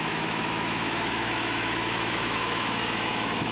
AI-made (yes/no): yes